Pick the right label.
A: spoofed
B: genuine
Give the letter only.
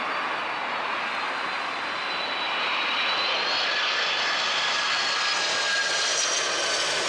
B